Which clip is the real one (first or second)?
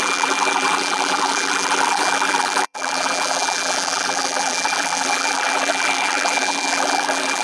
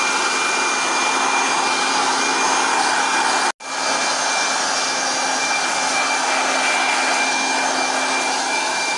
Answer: second